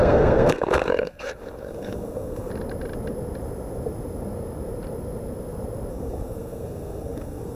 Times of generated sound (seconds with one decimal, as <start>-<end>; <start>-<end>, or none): 0.0-2.5; 5.9-7.6